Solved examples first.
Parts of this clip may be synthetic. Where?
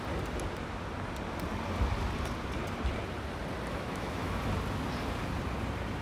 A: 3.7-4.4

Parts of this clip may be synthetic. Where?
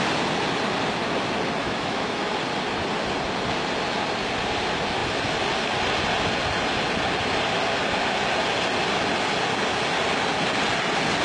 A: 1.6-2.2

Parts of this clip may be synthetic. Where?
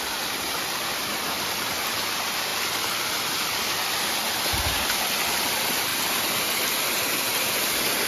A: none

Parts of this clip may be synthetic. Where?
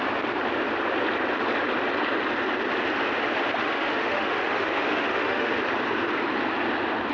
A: 3.6-5.5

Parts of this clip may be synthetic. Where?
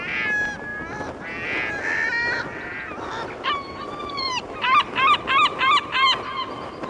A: none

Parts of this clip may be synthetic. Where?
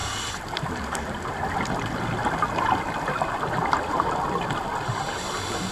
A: none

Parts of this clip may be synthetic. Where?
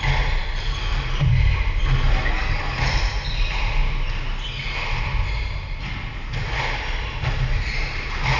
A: none